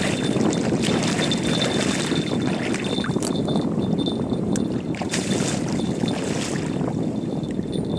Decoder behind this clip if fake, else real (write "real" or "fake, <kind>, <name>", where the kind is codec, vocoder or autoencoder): real